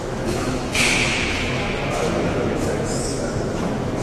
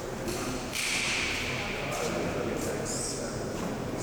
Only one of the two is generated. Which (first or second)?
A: first